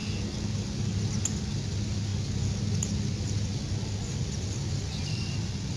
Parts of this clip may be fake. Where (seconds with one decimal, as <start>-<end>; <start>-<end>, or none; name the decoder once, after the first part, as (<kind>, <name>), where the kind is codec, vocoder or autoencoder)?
none